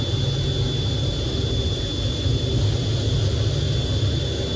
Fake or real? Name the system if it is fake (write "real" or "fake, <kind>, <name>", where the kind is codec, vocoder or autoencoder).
real